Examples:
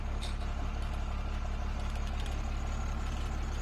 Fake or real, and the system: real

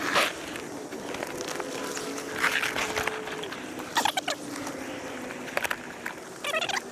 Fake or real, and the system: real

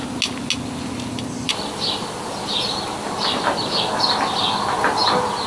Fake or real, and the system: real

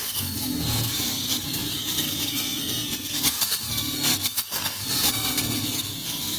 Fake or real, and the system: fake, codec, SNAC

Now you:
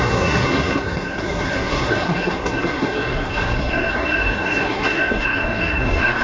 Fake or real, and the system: fake, codec, SNAC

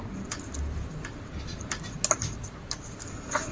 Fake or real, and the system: real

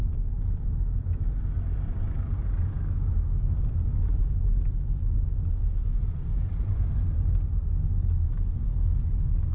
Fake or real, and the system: real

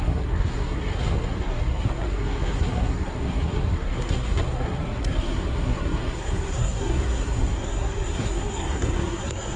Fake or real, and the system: fake, codec, SNAC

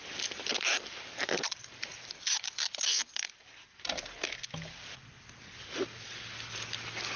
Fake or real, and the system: real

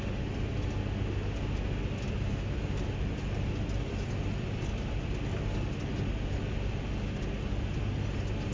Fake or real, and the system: real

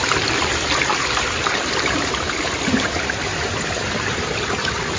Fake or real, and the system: real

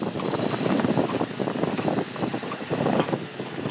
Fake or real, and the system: real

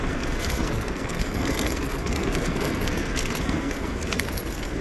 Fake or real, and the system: fake, codec, SNAC